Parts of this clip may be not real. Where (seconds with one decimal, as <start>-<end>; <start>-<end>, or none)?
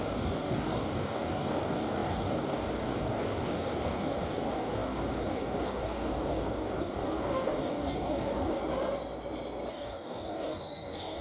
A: 0.0-8.6; 9.7-11.2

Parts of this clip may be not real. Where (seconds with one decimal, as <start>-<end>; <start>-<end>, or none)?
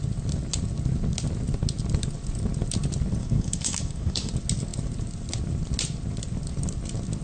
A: 3.2-4.3